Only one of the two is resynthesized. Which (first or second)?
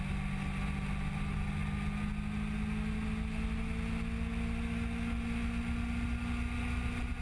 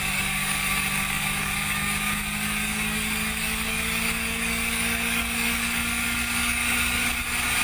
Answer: second